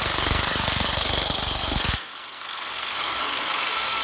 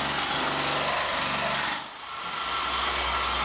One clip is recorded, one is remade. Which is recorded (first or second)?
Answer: second